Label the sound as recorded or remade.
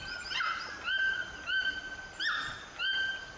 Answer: recorded